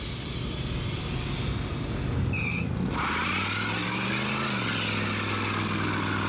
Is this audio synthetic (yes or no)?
no